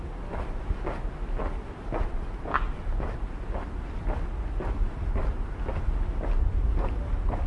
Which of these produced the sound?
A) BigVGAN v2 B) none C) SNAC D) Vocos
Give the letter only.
B